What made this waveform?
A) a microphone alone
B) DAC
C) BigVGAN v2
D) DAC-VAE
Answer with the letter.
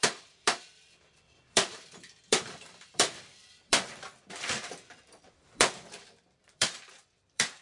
C